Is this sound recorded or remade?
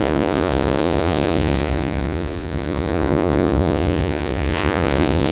remade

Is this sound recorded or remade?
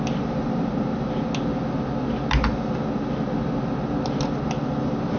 recorded